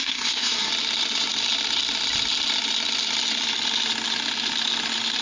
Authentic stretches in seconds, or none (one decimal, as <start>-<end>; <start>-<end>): 0.7-5.2